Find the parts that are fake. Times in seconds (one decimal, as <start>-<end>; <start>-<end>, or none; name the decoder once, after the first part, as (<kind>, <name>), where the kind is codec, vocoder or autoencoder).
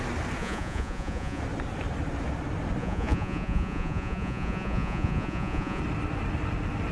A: 0.4-1.4 (vocoder, Vocos); 2.8-5.8